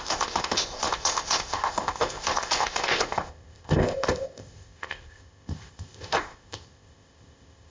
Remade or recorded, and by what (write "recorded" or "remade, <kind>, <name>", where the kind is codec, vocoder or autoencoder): remade, codec, ZipCodec